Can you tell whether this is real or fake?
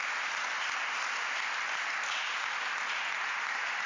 real